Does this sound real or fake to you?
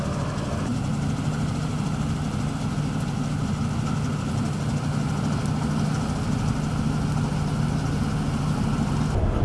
real